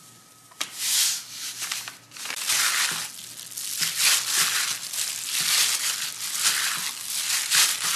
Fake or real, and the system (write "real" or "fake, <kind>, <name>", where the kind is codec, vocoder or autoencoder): real